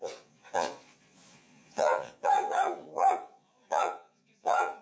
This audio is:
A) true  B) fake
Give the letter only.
B